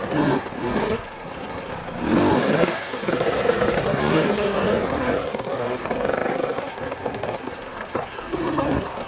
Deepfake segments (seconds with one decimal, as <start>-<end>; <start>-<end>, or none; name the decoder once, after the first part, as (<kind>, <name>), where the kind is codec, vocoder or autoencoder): 0.0-1.7 (codec, SNAC); 2.3-9.1